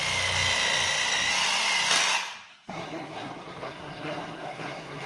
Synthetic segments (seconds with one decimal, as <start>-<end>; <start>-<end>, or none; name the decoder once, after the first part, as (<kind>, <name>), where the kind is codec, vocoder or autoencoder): 2.5-5.1 (codec, SNAC)